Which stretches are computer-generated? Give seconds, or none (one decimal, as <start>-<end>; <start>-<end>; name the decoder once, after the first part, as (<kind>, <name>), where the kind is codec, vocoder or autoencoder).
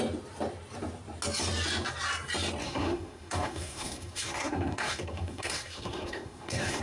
2.6-6.8 (codec, SNAC)